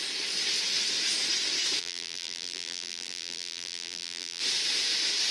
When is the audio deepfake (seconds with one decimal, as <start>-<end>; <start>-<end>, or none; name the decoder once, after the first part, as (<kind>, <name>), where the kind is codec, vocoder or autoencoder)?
1.8-4.4 (vocoder, BigVGAN v2)